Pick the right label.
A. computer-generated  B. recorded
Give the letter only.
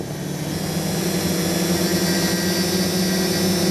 B